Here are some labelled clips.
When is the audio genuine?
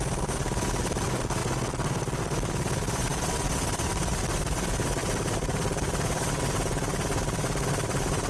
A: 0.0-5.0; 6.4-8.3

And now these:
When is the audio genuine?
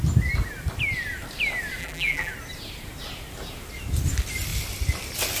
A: 0.0-1.8; 2.3-5.4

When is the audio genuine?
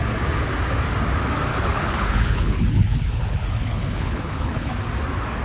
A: 0.0-1.5; 4.7-5.4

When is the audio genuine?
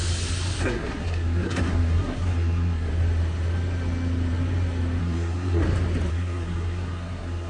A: 0.0-0.6; 2.9-5.0; 5.6-6.1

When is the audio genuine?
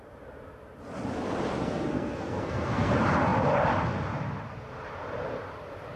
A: 0.0-1.6; 2.9-6.0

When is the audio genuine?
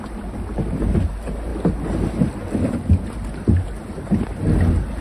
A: 0.0-5.0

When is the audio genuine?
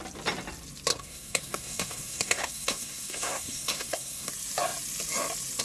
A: 0.0-0.9; 4.3-5.6